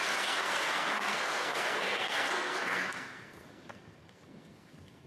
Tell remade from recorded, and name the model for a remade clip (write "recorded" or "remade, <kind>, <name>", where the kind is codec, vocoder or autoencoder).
remade, codec, SNAC